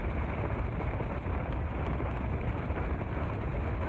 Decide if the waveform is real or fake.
real